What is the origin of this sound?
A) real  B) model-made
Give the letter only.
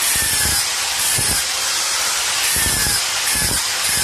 B